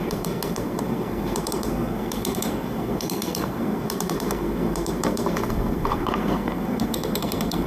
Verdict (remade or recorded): remade